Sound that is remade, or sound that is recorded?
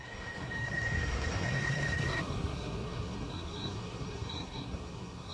remade